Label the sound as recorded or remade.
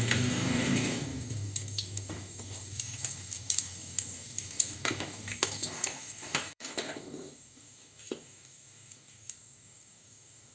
remade